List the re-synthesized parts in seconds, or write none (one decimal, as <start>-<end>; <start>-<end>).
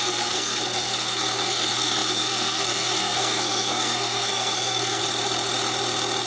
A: 0.0-5.0